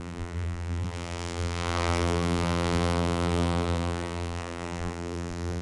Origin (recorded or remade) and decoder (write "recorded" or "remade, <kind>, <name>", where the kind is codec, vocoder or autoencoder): remade, vocoder, BigVGAN v2